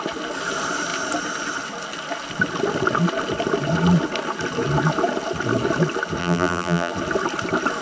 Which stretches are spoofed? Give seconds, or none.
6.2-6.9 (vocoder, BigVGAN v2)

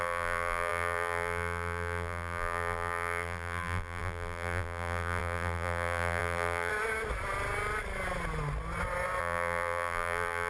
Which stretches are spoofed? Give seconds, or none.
0.0-6.7 (vocoder, BigVGAN v2); 9.2-10.5

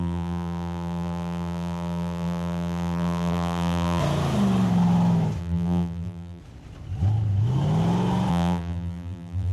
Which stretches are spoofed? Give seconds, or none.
0.0-4.0 (vocoder, BigVGAN v2); 5.4-6.4; 8.3-9.5

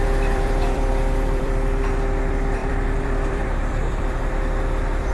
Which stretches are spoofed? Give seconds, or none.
0.0-5.1 (vocoder, BigVGAN v2)

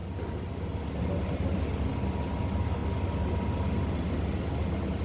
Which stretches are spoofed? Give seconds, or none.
none